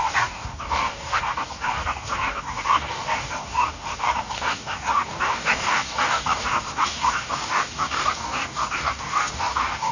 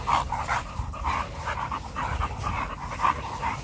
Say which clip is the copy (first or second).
first